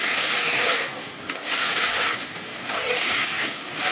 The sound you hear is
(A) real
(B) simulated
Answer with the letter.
B